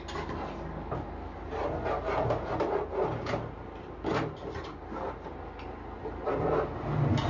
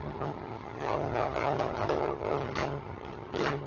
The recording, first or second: first